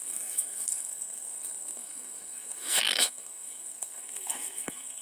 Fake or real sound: fake